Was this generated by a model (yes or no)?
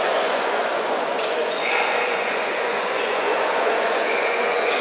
yes